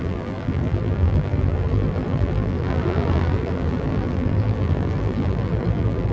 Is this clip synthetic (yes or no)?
yes